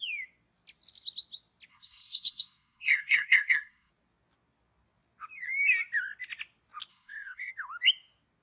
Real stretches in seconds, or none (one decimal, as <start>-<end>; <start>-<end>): 0.0-1.7; 3.9-6.9; 7.5-8.4